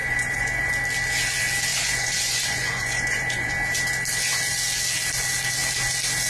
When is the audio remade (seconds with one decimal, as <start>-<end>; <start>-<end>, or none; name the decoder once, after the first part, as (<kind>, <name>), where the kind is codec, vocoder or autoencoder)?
0.0-0.7 (vocoder, Vocos); 1.7-3.5